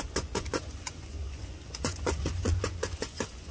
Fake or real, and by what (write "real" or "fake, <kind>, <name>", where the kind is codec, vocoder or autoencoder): fake, vocoder, Vocos